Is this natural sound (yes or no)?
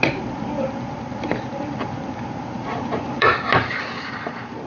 no